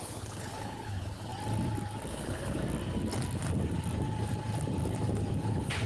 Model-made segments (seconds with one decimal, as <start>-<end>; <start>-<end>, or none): 0.0-1.3; 2.1-2.6; 5.4-5.9